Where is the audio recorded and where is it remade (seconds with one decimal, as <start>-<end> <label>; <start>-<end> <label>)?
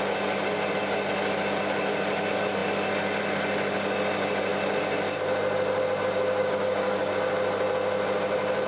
0.0-6.4 recorded; 6.4-7.1 remade; 7.1-8.7 recorded